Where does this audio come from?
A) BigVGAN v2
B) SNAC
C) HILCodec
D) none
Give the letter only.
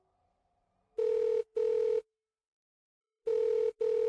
A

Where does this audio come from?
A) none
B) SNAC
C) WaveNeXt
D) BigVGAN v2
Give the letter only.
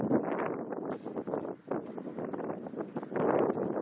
A